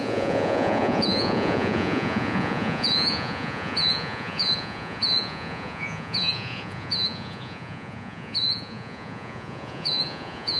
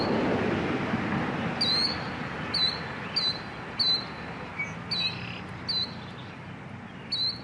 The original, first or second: second